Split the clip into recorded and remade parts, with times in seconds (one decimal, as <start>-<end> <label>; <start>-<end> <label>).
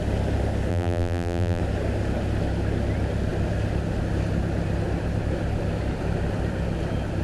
0.0-0.7 recorded; 0.7-1.6 remade; 1.6-7.2 recorded